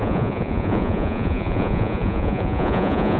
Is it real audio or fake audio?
fake